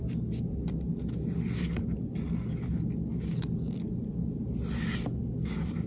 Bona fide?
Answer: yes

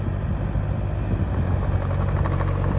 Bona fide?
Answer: yes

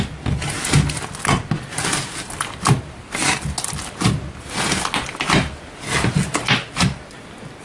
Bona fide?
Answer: yes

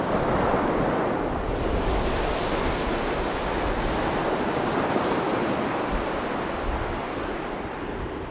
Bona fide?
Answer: yes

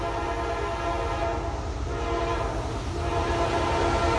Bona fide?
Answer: yes